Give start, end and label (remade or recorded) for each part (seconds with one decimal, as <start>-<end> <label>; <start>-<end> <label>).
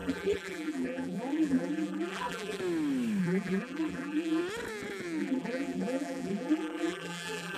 0.0-2.6 remade; 2.6-3.2 recorded; 3.2-4.4 remade; 4.4-5.2 recorded; 5.2-7.6 remade